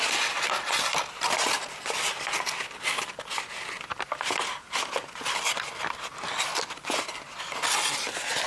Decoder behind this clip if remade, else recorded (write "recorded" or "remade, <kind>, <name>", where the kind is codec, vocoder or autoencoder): recorded